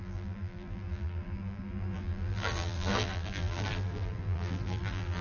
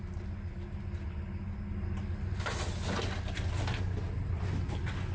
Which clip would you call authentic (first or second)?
second